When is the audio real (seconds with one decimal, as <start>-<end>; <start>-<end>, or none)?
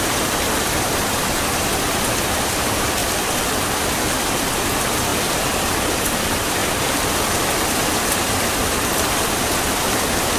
0.0-3.0; 3.5-6.6; 7.2-10.4